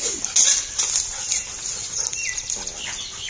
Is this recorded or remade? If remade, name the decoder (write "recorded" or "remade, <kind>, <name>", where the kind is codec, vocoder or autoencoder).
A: recorded